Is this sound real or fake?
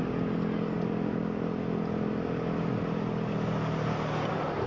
real